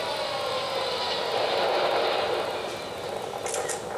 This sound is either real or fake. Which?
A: real